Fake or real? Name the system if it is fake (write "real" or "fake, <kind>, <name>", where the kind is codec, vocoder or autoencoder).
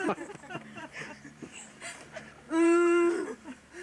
fake, vocoder, BigVGAN v2